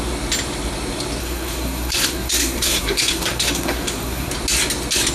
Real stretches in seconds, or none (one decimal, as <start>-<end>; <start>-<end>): 0.0-1.2; 4.3-5.1